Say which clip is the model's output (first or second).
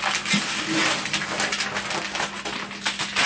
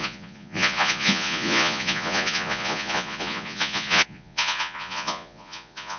second